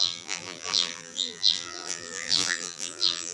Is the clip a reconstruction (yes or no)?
yes